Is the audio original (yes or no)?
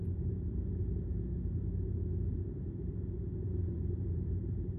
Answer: no